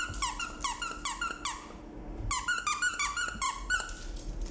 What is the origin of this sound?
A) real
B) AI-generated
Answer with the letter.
A